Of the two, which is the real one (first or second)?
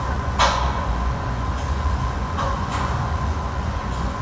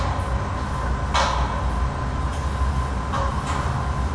second